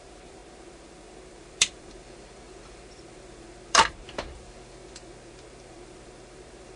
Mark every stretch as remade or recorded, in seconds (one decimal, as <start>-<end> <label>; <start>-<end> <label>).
0.0-6.8 remade